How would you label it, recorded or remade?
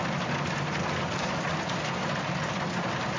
recorded